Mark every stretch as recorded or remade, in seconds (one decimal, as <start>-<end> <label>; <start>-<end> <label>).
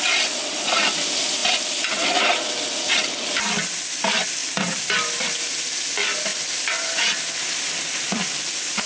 0.0-1.4 recorded; 1.4-2.2 remade; 2.2-4.4 recorded; 4.4-5.5 remade; 5.5-6.3 recorded; 6.3-8.5 remade; 8.5-8.9 recorded